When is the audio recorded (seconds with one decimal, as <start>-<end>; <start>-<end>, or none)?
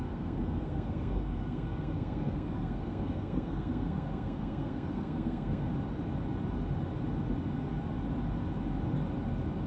5.7-9.7